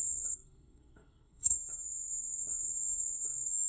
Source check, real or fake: fake